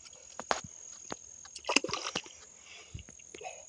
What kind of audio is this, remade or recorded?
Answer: recorded